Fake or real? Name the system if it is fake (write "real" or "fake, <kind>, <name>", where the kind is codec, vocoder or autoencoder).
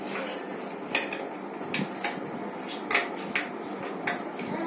real